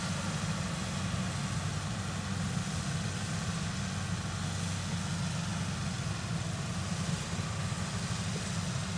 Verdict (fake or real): real